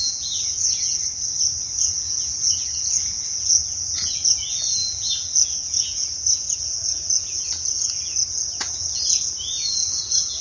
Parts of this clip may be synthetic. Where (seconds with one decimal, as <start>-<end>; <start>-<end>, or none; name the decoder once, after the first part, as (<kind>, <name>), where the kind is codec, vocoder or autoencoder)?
0.0-1.0 (vocoder, Vocos); 1.7-10.4